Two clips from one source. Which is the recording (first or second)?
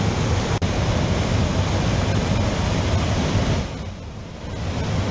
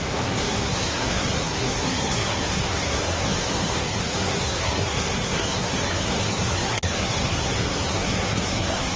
first